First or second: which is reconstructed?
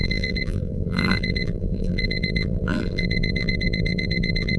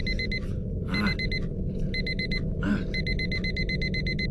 first